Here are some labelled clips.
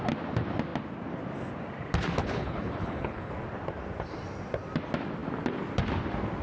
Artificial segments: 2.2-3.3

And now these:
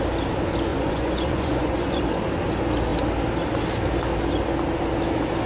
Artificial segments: 0.7-2.0

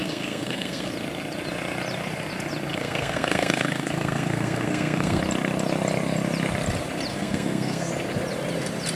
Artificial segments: 0.0-0.9; 2.7-5.2; 7.1-7.9